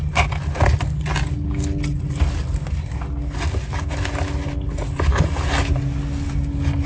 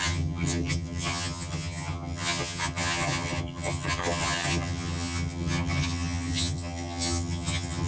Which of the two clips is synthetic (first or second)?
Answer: second